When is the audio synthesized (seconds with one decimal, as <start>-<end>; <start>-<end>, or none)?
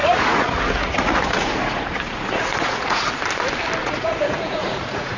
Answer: 0.0-3.1; 3.8-5.2